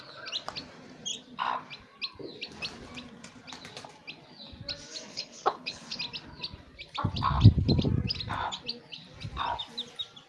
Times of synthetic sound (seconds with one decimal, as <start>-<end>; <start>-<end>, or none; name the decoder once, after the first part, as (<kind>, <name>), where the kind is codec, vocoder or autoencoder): 5.1-6.0 (codec, HILCodec)